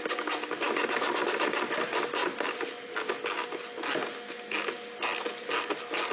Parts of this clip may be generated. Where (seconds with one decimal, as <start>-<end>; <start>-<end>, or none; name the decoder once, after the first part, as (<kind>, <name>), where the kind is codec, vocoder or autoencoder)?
none